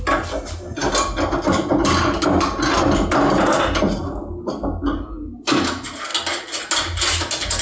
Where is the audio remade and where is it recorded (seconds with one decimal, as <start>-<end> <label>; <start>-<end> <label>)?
0.0-7.6 recorded

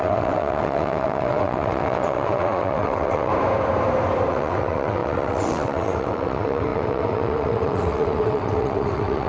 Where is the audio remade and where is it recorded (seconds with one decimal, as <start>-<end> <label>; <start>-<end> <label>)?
0.0-3.3 remade; 3.3-4.3 recorded; 4.3-9.3 remade